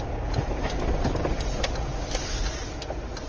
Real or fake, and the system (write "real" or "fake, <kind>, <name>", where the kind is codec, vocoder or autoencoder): real